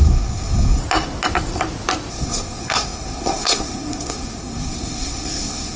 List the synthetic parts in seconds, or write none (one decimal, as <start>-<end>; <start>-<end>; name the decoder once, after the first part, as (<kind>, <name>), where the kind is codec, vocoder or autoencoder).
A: 0.0-0.8 (codec, SNAC); 2.1-5.8